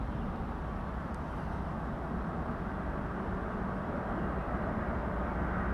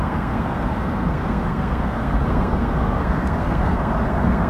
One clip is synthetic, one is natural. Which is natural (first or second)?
first